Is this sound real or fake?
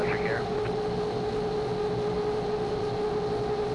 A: real